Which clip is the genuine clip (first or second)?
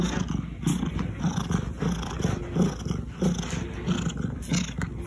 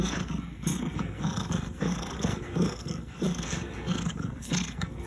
first